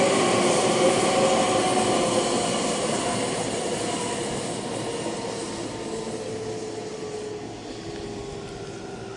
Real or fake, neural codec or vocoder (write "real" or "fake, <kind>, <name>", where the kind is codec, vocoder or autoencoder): real